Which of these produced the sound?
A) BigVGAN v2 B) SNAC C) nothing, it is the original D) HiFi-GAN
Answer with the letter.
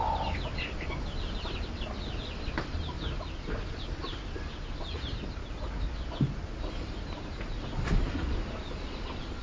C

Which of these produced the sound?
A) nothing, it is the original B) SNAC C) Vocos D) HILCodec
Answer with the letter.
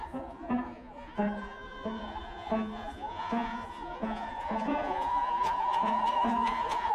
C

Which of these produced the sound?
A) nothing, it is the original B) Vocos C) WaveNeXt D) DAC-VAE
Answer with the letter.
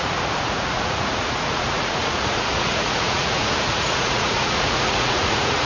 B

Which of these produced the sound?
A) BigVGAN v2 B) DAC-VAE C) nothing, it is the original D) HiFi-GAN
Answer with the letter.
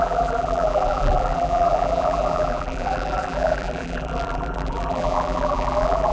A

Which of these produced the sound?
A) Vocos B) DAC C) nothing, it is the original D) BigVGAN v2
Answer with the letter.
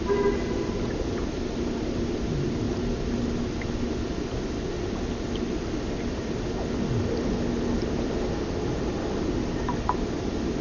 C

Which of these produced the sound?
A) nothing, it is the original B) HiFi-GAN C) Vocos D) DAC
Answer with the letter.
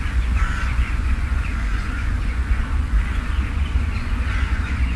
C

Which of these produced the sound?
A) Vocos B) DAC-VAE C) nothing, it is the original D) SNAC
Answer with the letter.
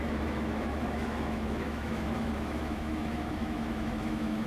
B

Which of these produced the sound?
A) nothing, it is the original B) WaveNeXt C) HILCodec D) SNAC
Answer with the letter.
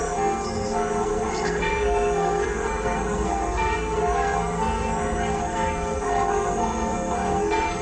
D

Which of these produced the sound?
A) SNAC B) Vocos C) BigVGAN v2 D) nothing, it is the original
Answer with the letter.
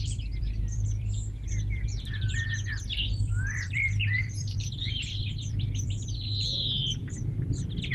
C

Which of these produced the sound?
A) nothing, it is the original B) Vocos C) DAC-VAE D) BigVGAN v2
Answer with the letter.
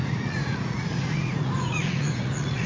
B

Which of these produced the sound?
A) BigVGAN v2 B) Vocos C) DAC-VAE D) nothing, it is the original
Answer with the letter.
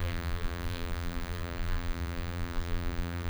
A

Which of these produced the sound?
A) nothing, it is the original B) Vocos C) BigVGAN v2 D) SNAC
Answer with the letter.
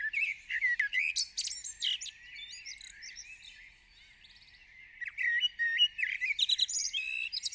A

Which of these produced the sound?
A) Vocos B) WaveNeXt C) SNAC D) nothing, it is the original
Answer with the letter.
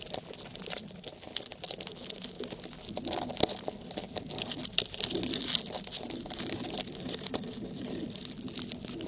D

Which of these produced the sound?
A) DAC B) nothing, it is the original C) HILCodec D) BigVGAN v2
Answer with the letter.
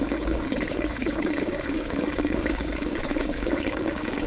A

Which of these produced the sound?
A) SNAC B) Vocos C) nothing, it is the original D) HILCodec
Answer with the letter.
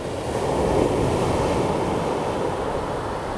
C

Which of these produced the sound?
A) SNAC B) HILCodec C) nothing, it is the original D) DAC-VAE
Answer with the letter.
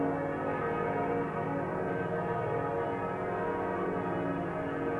C